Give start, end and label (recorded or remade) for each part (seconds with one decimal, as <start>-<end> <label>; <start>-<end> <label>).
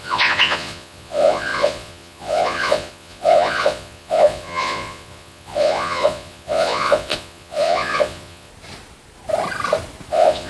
0.0-8.5 remade; 8.5-10.1 recorded; 10.1-10.5 remade